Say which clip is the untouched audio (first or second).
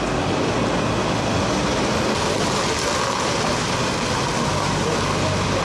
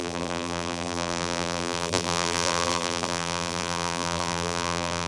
first